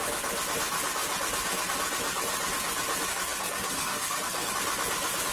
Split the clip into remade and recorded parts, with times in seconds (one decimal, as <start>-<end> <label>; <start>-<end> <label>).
0.0-3.1 recorded; 3.1-4.5 remade; 4.5-5.3 recorded